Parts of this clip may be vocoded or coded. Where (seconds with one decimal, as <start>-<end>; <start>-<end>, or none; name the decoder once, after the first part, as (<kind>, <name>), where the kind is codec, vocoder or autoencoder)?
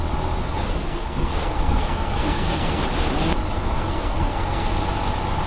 0.4-2.8 (codec, SNAC); 3.5-4.7